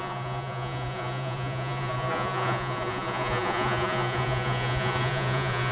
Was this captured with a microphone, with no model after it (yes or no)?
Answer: no